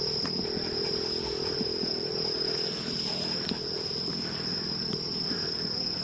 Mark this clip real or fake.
real